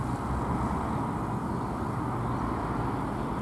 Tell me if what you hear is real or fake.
real